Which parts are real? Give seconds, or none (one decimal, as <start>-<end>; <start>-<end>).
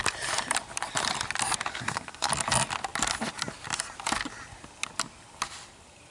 0.0-1.7; 2.3-6.1